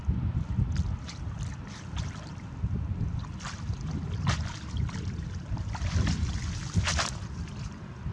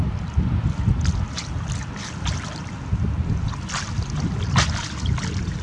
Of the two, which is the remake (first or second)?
first